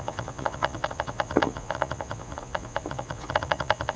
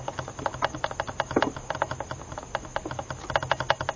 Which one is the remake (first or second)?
first